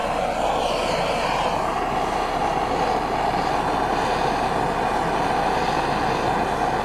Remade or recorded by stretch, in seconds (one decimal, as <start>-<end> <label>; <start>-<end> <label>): 0.0-0.6 recorded; 0.6-2.4 remade; 2.4-6.8 recorded